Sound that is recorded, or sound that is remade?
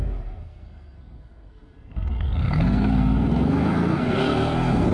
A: remade